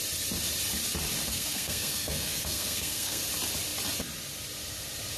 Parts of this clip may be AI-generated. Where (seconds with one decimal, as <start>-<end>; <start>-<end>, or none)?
1.3-3.2